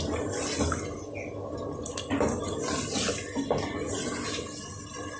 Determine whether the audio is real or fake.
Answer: real